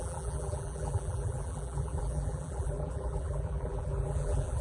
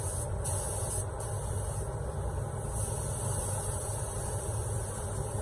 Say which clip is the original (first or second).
second